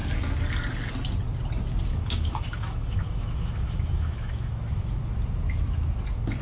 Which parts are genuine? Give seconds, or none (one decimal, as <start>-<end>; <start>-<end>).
0.0-1.9; 4.9-6.4